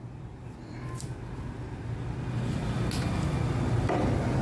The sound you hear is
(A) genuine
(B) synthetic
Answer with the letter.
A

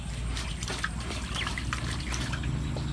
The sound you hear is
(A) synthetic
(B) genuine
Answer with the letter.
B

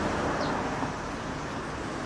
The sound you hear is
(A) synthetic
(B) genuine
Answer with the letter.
B